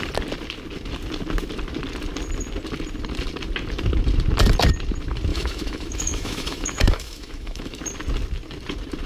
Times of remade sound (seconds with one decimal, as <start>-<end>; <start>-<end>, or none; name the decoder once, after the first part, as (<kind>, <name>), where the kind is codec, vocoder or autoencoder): 5.3-7.8 (autoencoder, DAC-VAE)